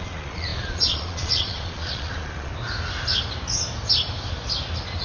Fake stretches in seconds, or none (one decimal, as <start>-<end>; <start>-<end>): 0.0-2.5